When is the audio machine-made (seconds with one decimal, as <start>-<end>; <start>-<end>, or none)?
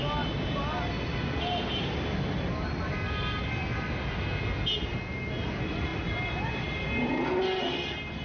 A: none